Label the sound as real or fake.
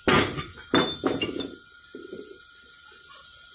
real